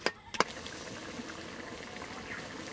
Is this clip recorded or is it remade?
recorded